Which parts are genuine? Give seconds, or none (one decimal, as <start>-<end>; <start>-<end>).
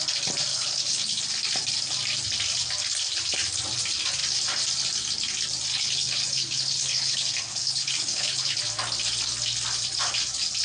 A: 0.0-0.5; 1.2-5.7; 8.6-10.6